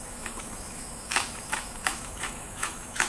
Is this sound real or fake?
fake